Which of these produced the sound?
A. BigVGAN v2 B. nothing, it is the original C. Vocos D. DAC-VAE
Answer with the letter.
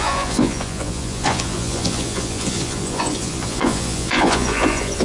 C